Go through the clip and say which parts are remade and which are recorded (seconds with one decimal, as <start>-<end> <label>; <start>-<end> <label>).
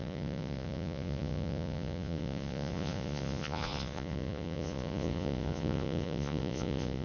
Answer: 0.0-7.0 remade